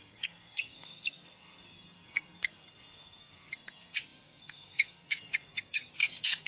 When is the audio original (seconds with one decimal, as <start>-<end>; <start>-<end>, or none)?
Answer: none